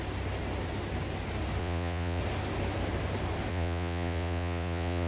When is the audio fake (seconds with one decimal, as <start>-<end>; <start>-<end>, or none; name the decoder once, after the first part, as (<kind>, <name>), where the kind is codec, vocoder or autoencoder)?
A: 1.6-2.2 (vocoder, Vocos); 3.5-5.1